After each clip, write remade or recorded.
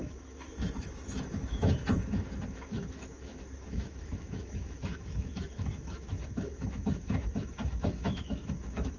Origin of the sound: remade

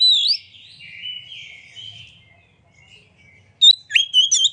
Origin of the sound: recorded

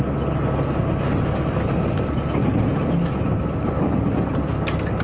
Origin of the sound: recorded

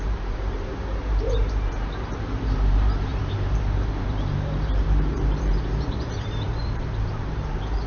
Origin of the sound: remade